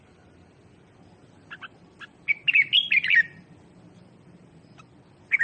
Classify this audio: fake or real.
real